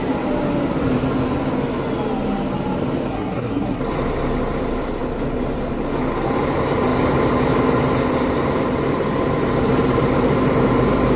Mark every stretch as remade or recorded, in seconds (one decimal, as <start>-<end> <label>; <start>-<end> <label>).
0.0-3.1 recorded; 3.1-3.8 remade; 3.8-11.2 recorded